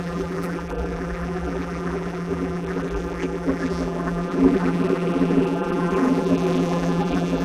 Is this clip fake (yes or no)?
yes